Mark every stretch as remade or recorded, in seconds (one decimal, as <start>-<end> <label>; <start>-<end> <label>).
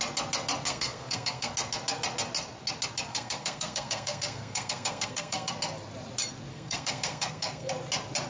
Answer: 0.0-0.7 recorded; 0.7-1.5 remade; 1.5-3.1 recorded; 3.1-5.5 remade; 5.5-6.5 recorded; 6.5-7.7 remade; 7.7-8.3 recorded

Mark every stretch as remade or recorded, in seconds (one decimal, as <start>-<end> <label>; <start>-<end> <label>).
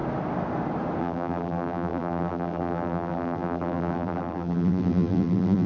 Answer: 0.0-1.0 recorded; 1.0-5.7 remade